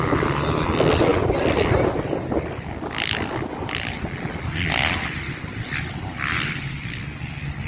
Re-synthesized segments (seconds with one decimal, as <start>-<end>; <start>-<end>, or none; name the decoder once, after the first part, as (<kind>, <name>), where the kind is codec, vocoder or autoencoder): none